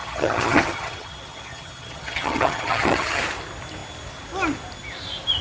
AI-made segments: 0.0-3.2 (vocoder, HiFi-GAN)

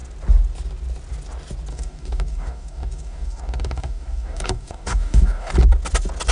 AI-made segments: 1.7-5.5 (codec, DAC)

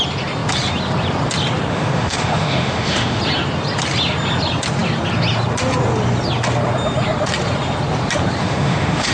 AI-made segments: 1.7-3.2 (autoencoder, DAC-VAE); 8.4-9.1

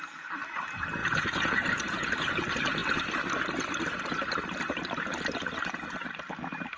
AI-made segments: 1.0-2.3 (vocoder, Vocos)